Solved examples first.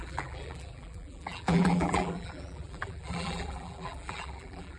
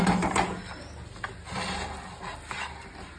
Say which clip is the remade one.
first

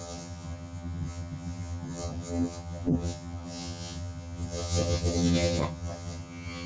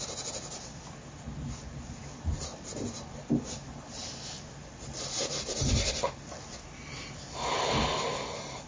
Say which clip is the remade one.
first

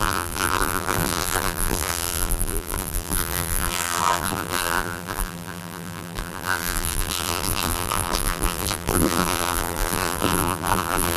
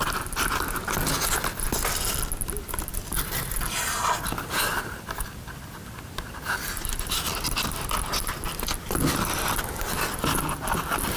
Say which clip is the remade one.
first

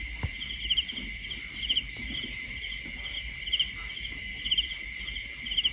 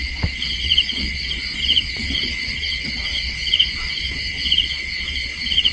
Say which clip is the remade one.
second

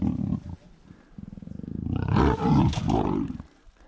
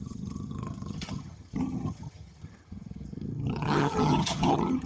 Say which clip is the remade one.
second